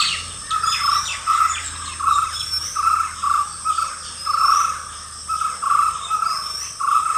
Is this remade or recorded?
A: recorded